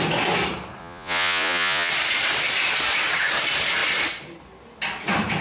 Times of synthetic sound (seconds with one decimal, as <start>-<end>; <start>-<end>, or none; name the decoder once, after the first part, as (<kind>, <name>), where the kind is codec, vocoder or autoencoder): 0.8-1.9 (vocoder, Vocos)